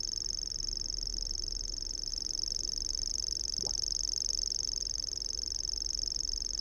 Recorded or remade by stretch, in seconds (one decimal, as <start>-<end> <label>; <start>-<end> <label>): 0.0-6.6 recorded